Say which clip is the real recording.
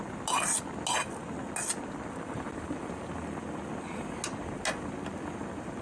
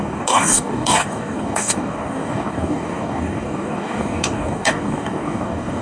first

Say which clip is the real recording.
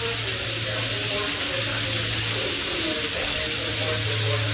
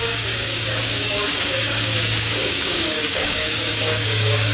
first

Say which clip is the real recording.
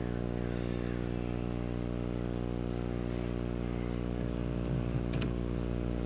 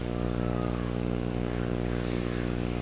first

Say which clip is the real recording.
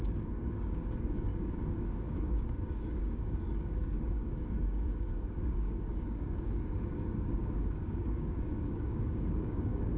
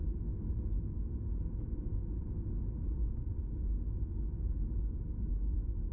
second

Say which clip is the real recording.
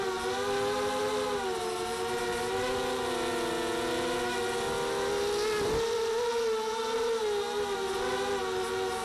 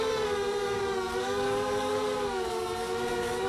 first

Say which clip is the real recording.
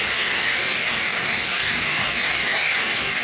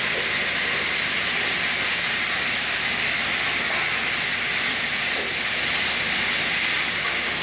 second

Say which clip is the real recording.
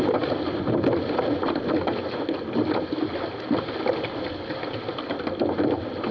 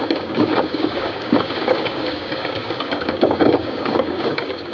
first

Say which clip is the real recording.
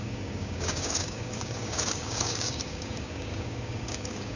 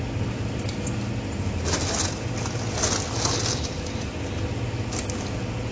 second